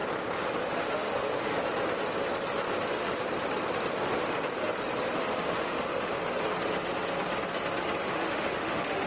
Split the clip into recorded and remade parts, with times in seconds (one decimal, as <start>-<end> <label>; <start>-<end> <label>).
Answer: 0.0-0.8 recorded; 0.8-1.5 remade; 1.5-5.1 recorded; 5.1-6.2 remade; 6.2-8.0 recorded; 8.0-9.1 remade